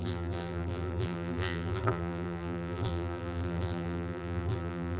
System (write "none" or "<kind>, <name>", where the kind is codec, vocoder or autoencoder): vocoder, BigVGAN v2